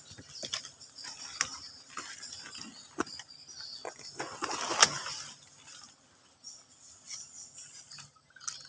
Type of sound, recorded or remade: recorded